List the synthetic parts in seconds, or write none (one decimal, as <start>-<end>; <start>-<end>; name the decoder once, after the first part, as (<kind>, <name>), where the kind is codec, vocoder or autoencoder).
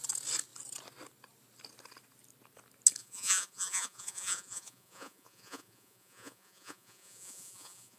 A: 3.0-8.0 (vocoder, Vocos)